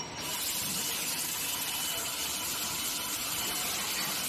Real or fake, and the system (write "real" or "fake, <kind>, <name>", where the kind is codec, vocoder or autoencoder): real